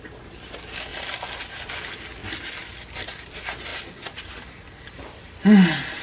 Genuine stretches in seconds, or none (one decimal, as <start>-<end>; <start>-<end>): 0.0-6.0